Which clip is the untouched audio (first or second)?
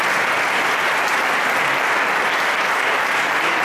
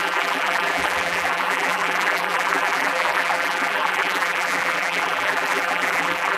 first